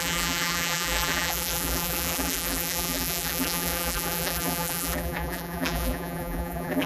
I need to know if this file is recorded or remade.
remade